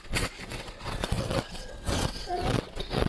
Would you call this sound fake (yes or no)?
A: yes